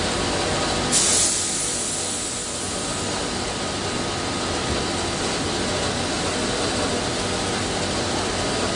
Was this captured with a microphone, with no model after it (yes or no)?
yes